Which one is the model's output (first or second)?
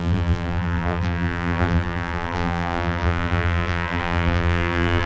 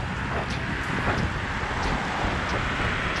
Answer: first